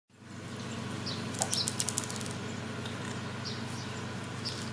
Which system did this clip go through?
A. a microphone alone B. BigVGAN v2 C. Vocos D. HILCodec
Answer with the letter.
A